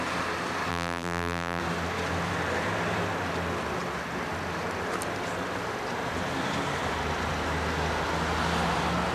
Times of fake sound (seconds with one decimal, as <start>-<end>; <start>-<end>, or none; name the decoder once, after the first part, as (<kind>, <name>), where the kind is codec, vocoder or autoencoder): 0.7-1.6 (vocoder, BigVGAN v2)